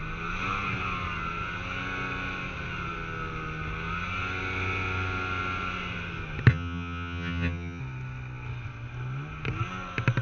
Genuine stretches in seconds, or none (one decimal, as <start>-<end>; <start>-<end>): 0.0-6.5; 7.8-10.2